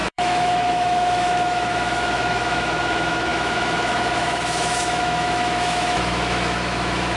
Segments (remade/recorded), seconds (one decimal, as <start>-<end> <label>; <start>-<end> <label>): 0.0-7.2 remade